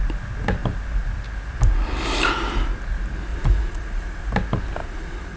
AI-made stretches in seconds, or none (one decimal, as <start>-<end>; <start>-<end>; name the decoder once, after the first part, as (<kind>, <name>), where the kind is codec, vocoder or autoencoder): 3.3-4.3 (vocoder, Vocos); 4.8-5.4